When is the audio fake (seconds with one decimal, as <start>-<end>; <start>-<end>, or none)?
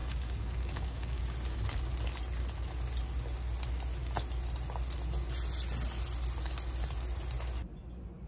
0.0-1.2